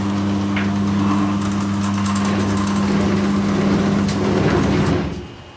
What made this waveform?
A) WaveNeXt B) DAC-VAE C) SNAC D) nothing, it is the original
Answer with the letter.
D